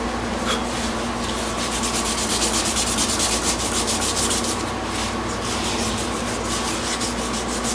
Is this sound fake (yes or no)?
no